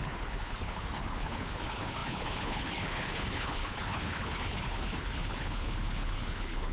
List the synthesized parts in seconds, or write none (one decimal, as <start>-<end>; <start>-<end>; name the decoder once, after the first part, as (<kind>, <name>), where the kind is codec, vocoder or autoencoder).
0.0-6.7 (codec, HILCodec)